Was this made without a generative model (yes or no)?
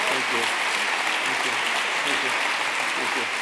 yes